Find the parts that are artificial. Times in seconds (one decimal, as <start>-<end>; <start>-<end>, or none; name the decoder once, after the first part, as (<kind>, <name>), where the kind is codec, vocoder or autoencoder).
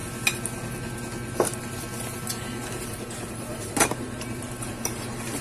2.8-5.4 (vocoder, BigVGAN v2)